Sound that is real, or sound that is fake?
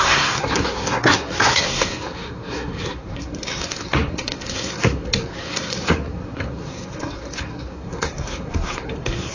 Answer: fake